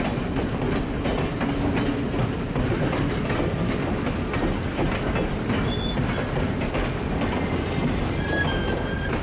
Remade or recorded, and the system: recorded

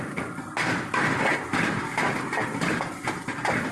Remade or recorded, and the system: recorded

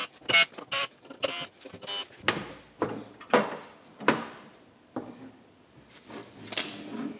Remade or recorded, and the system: recorded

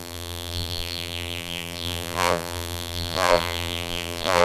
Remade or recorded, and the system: remade, vocoder, BigVGAN v2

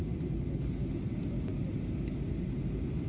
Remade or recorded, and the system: recorded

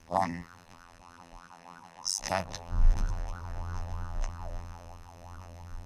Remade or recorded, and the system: remade, vocoder, BigVGAN v2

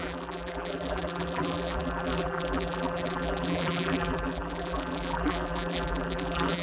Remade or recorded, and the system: remade, vocoder, BigVGAN v2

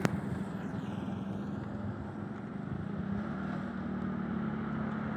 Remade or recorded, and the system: recorded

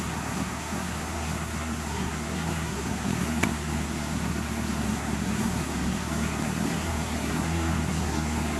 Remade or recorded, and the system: remade, codec, SNAC